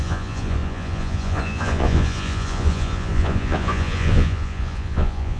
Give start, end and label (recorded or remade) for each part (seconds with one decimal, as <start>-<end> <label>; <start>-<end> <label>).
0.0-5.4 remade